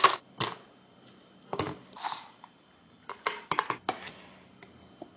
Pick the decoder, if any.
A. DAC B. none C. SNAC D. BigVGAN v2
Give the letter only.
B